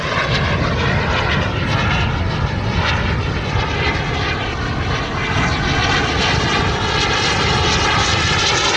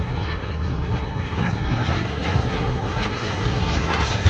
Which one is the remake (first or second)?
second